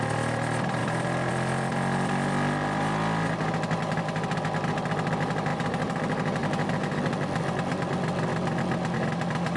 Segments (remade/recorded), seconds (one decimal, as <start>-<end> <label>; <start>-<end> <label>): 0.0-0.8 recorded; 0.8-1.3 remade; 1.3-5.5 recorded; 5.5-6.0 remade; 6.0-9.6 recorded